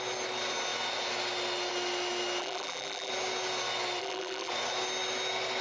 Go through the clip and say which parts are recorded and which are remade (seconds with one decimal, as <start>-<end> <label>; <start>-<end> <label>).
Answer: 0.0-2.4 recorded; 2.4-3.1 remade; 3.1-4.0 recorded; 4.0-4.5 remade; 4.5-5.6 recorded